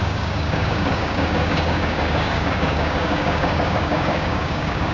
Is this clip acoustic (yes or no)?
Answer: no